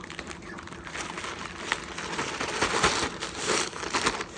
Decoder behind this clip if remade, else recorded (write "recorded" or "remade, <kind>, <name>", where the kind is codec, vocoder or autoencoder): recorded